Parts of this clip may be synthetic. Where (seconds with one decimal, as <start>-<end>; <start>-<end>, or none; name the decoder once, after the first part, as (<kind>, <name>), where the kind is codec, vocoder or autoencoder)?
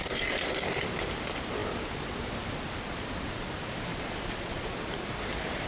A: 3.9-4.7 (vocoder, Vocos)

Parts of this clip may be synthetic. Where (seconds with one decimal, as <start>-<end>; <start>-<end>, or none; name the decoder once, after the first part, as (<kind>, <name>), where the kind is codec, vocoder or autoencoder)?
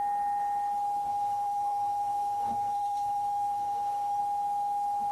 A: 1.1-4.2 (codec, SNAC)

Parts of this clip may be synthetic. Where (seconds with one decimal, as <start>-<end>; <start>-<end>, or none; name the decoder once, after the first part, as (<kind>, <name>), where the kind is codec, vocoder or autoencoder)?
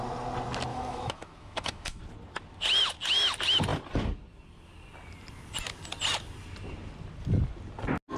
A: 0.7-2.0 (autoencoder, DAC-VAE)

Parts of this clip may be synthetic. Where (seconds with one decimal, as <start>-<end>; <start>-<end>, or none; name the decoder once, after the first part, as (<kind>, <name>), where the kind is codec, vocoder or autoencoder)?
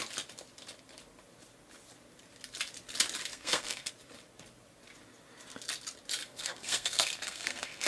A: 3.3-3.9 (codec, SNAC); 6.2-7.9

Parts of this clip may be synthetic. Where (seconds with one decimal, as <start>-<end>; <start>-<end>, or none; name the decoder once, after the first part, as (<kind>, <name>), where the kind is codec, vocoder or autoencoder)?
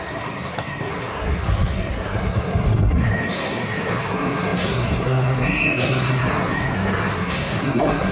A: 0.0-8.1 (codec, SNAC)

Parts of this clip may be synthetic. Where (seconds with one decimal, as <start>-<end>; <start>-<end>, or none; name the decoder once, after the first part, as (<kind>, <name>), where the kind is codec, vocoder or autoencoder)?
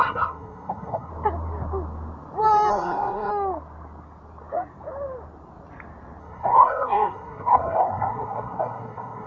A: 0.0-1.1 (codec, SNAC); 2.7-3.3; 6.2-9.3